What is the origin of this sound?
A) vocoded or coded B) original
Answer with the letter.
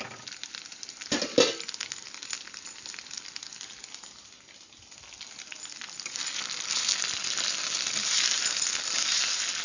B